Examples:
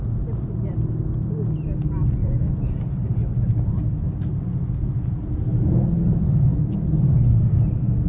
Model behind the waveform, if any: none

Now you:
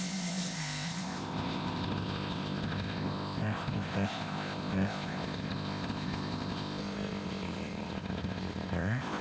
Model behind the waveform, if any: codec, ZipCodec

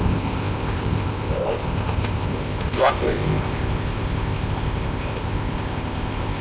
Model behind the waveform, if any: codec, ZipCodec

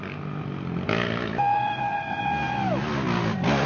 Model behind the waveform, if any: none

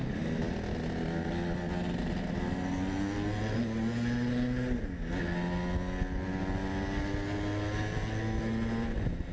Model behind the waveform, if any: none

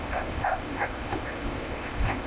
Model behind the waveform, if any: codec, ZipCodec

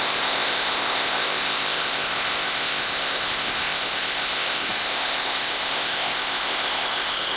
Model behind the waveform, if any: codec, ZipCodec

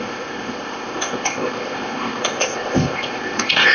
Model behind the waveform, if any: codec, ZipCodec